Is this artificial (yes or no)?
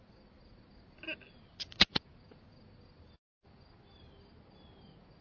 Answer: no